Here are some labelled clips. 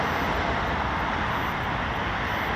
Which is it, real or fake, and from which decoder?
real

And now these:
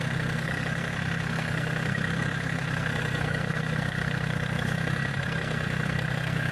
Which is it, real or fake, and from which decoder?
fake, codec, SNAC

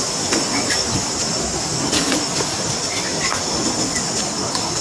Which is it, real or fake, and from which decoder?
real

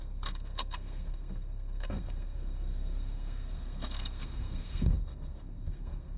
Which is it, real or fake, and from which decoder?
fake, codec, SNAC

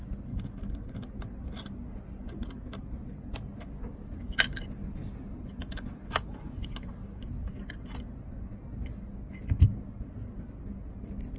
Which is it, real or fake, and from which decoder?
real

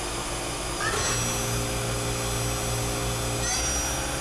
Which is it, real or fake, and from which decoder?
real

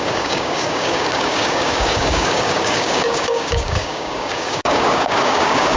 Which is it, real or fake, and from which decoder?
fake, codec, DAC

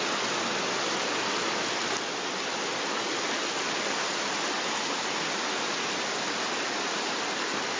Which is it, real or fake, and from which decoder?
real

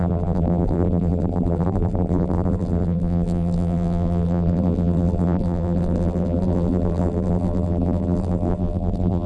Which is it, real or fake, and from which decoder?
fake, vocoder, BigVGAN v2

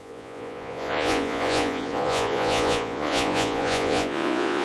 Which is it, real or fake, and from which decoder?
fake, vocoder, Vocos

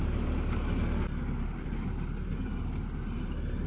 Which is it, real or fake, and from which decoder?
real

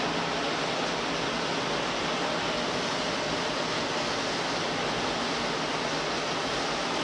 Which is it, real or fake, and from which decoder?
real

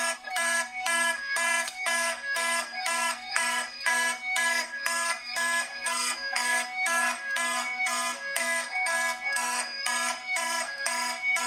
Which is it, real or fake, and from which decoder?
fake, codec, SNAC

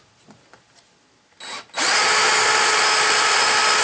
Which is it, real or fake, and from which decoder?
real